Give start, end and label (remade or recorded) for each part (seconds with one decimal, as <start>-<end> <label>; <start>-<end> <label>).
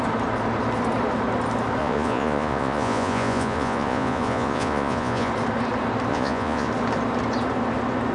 0.0-1.8 recorded; 1.8-5.3 remade; 5.3-6.1 recorded; 6.1-6.7 remade; 6.7-8.1 recorded